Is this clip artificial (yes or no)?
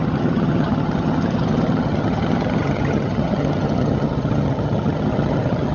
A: yes